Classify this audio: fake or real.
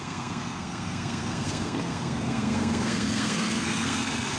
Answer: fake